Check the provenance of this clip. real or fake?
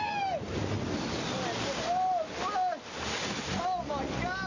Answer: real